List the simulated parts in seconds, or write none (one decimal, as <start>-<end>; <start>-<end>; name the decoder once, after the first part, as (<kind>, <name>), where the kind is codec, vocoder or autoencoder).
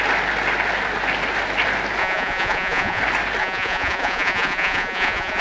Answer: 2.0-3.0 (vocoder, Vocos); 3.4-5.4